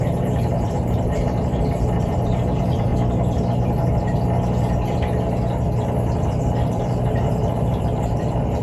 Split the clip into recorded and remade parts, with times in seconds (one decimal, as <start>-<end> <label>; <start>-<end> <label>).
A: 0.0-2.9 remade; 2.9-6.7 recorded; 6.7-8.6 remade